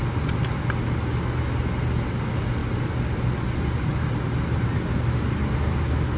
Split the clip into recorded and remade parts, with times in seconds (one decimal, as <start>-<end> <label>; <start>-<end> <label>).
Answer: 0.0-6.2 recorded